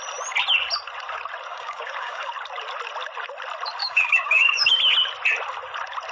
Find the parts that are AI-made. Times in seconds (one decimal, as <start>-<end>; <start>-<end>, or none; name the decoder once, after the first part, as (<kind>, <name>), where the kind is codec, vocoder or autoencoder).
1.5-2.3 (codec, DAC); 3.8-4.8